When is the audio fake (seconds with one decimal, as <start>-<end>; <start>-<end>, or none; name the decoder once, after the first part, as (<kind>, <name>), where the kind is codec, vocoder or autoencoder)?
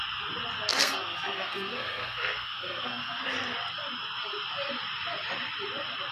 0.8-3.2 (codec, SNAC)